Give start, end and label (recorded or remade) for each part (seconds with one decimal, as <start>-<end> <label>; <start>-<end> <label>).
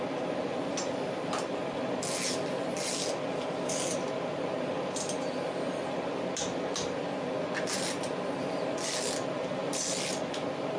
0.0-10.8 recorded